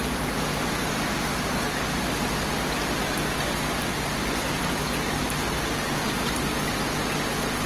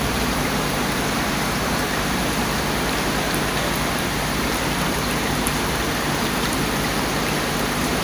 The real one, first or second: first